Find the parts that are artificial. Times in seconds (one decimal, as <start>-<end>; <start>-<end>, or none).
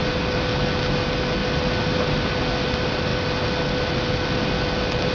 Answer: none